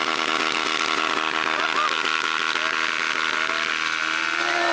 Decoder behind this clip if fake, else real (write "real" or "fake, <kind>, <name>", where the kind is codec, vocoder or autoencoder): real